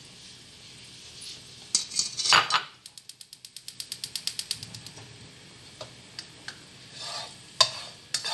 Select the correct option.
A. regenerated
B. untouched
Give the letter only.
B